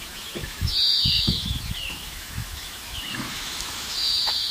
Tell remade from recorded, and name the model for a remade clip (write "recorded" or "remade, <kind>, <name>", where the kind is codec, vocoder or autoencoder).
remade, autoencoder, DAC-VAE